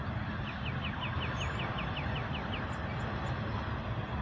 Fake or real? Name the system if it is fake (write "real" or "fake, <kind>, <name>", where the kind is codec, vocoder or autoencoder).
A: real